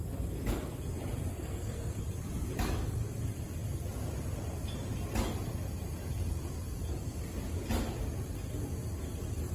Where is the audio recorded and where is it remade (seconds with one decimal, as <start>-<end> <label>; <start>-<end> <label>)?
0.0-1.3 recorded; 1.3-2.0 remade; 2.0-9.5 recorded